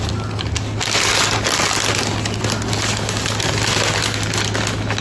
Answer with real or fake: real